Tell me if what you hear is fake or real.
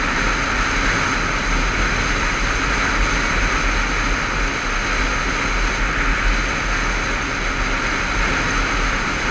real